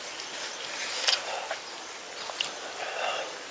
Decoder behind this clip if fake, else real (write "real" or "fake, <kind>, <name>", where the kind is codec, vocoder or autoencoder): real